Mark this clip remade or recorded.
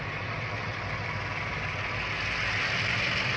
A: recorded